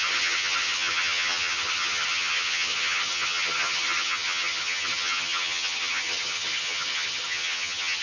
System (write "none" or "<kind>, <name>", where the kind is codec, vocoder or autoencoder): vocoder, HiFi-GAN